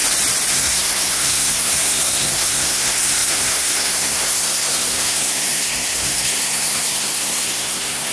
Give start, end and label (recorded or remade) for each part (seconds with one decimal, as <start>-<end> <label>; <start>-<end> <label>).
0.0-0.5 recorded; 0.5-8.1 remade